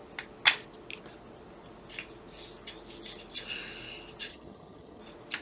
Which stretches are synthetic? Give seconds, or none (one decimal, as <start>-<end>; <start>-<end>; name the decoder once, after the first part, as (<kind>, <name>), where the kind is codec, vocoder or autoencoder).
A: 4.3-5.0 (vocoder, HiFi-GAN)